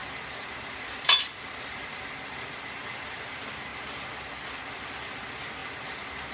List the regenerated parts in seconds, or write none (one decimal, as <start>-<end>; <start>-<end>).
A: none